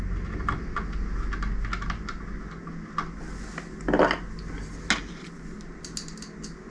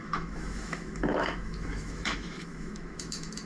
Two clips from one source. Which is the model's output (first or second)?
second